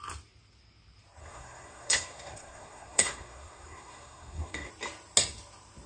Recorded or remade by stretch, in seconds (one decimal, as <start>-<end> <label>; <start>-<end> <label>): 0.0-1.2 recorded; 1.2-4.7 remade; 4.7-5.9 recorded